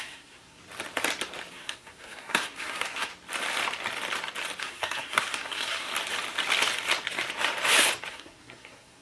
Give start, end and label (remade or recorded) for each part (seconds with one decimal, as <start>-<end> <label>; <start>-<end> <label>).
0.0-0.6 remade; 0.6-1.5 recorded; 1.5-3.1 remade; 3.1-4.6 recorded; 4.6-5.9 remade; 5.9-8.1 recorded; 8.1-9.0 remade